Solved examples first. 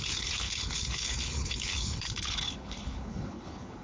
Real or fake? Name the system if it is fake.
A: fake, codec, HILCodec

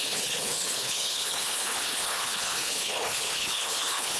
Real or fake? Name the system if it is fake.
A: fake, codec, HILCodec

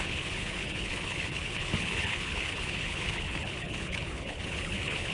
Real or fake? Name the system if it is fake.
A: fake, codec, HILCodec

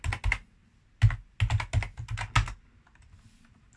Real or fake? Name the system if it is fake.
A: real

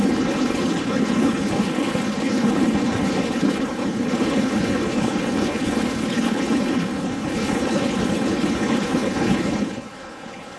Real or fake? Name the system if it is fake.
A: fake, codec, HILCodec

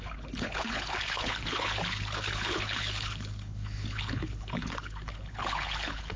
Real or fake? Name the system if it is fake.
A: fake, codec, HILCodec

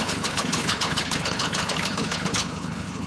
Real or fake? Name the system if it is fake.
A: fake, codec, HILCodec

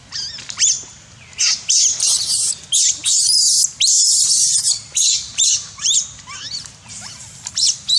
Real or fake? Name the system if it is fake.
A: real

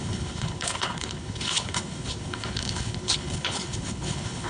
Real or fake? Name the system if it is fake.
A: fake, codec, HILCodec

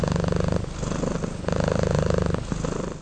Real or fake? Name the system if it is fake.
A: real